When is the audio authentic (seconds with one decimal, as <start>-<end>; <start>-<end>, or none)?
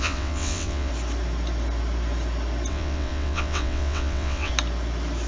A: 0.9-2.7; 4.5-5.3